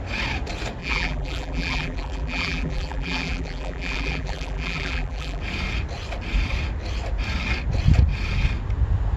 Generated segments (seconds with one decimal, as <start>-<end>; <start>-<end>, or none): 0.8-5.4